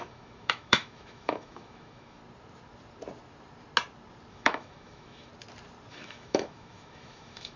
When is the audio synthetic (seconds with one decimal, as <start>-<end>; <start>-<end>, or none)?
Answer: 0.0-2.2; 4.3-5.3; 5.9-7.6

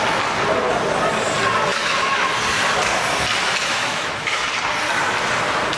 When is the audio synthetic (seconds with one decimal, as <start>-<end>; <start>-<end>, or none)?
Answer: 1.7-2.3; 3.6-4.4

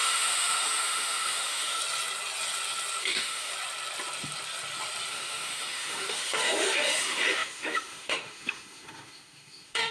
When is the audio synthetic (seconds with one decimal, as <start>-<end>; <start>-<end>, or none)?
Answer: 0.0-1.8; 3.0-3.5; 5.1-9.9

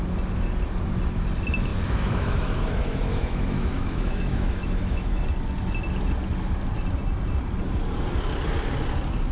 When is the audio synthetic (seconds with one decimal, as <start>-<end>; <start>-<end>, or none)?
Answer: 1.7-5.2

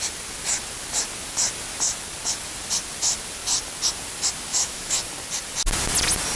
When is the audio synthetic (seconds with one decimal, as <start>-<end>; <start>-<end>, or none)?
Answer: 4.5-5.0

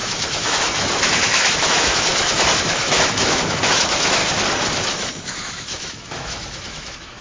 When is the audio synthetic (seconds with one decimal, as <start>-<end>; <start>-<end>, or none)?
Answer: 0.0-4.2; 4.9-7.2